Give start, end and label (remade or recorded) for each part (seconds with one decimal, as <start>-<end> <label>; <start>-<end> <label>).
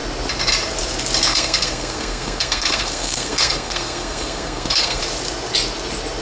0.0-1.3 recorded; 1.3-5.0 remade; 5.0-6.2 recorded